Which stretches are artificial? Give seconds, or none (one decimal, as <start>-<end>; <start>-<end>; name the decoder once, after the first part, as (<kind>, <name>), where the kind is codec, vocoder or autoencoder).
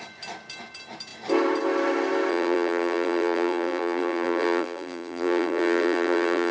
2.3-6.5 (vocoder, BigVGAN v2)